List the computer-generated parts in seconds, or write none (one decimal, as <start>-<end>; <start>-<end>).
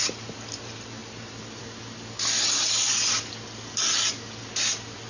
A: none